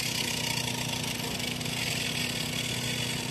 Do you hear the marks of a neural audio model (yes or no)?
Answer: no